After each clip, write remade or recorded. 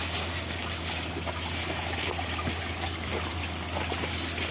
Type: recorded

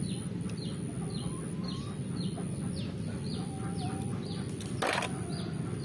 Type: recorded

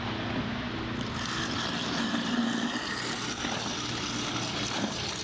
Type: recorded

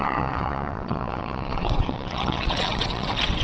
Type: remade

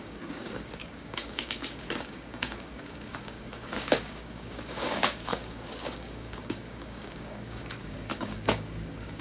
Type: remade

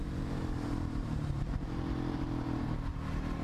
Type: remade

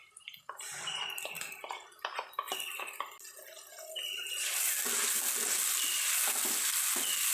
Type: recorded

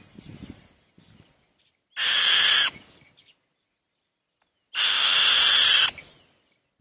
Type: recorded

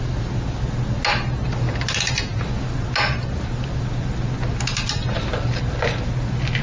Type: recorded